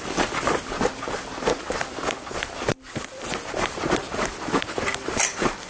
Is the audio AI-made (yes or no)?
yes